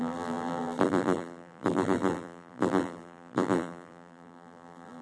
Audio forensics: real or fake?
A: fake